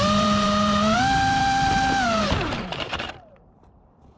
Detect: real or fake fake